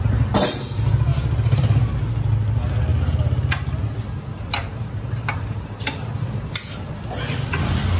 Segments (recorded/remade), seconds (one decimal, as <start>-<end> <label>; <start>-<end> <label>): 0.0-4.3 recorded; 4.3-6.9 remade; 6.9-8.0 recorded